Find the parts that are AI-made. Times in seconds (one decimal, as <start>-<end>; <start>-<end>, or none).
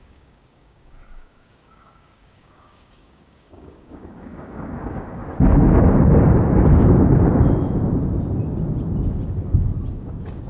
0.0-5.2; 9.9-10.5